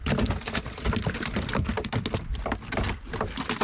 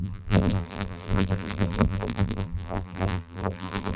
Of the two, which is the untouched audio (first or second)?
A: first